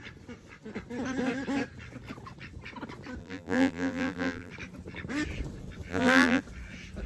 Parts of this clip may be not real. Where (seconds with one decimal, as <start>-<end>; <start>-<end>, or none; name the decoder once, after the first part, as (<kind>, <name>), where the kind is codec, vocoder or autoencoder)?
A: 3.2-4.5 (vocoder, BigVGAN v2); 5.9-6.4